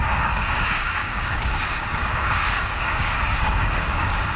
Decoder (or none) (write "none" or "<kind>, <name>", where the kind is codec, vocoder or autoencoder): codec, DAC